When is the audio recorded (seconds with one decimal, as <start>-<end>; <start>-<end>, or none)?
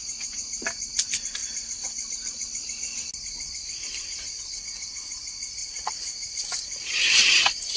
0.5-5.6; 6.3-7.8